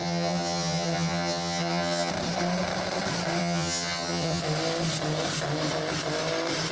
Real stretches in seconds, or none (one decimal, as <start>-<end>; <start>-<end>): 2.1-3.4; 4.4-6.7